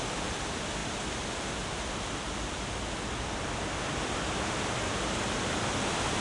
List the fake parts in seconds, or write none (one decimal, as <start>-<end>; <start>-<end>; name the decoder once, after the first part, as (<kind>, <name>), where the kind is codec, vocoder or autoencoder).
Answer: none